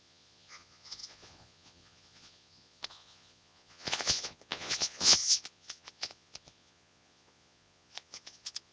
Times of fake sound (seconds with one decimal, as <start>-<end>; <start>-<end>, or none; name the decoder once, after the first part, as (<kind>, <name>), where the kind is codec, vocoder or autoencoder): 0.0-8.7 (vocoder, Vocos)